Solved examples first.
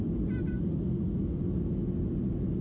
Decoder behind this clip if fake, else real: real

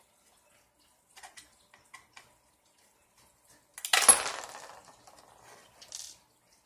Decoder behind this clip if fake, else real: real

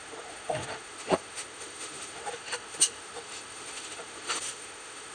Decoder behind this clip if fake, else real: fake, autoencoder, DAC-VAE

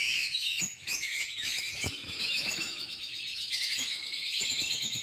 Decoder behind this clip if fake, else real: fake, autoencoder, DAC-VAE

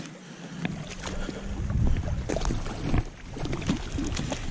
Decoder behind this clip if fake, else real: real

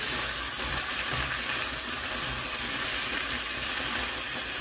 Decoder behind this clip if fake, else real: real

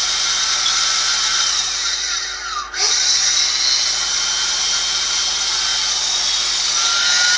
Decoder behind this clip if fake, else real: real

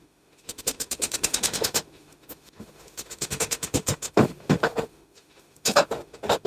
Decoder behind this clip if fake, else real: fake, autoencoder, DAC-VAE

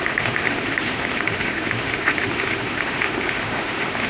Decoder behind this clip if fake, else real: fake, autoencoder, DAC-VAE